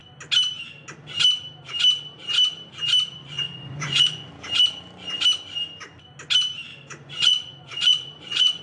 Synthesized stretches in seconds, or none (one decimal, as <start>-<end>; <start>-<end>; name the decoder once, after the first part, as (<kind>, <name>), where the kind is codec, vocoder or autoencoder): 3.2-4.3 (vocoder, Vocos); 6.7-8.6